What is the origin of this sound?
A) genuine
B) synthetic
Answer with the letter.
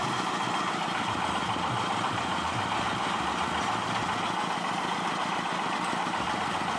A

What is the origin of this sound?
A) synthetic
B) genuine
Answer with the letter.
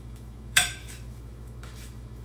A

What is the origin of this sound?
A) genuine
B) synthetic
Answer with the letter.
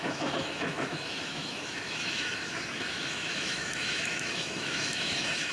B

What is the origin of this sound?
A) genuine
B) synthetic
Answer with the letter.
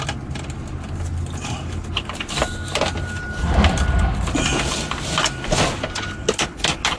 A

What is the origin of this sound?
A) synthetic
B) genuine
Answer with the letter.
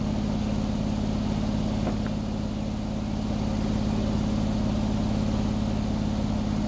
B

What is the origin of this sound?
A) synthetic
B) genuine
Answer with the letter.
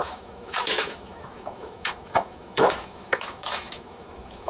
A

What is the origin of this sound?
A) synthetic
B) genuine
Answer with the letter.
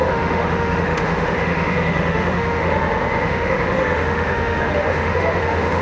A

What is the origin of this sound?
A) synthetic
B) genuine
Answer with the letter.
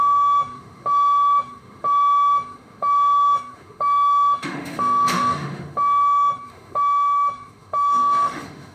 A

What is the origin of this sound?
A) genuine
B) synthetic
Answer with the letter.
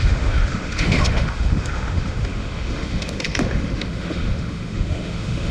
B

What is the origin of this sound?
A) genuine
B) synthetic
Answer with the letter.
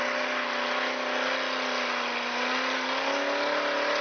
A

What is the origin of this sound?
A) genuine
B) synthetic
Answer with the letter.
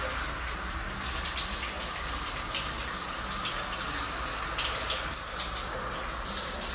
A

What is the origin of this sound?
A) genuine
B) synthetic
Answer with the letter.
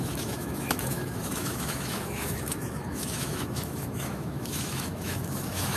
B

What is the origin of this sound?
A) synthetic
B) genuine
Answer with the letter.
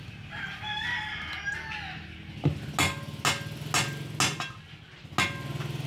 B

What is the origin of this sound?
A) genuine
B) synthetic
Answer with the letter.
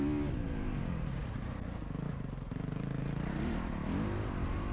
A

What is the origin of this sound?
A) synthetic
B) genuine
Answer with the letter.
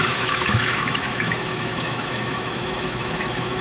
A